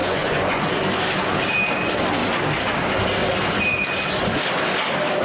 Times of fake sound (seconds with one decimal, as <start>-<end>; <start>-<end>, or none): 0.0-0.7